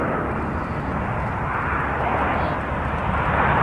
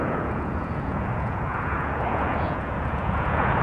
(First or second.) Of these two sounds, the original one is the first